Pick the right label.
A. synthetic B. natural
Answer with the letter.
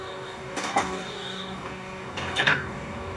A